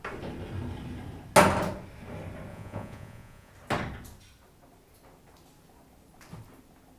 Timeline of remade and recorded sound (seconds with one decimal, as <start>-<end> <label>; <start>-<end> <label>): 0.0-2.5 recorded; 2.5-3.5 remade; 3.5-7.0 recorded